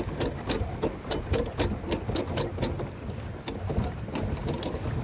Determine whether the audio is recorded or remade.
recorded